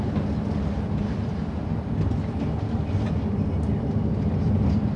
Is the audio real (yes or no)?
yes